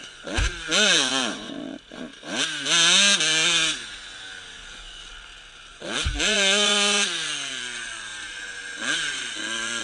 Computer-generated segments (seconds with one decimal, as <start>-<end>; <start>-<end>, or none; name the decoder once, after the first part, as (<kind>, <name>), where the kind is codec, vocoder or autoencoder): 0.0-2.1 (vocoder, Vocos); 4.5-5.0; 5.7-8.1; 8.8-9.8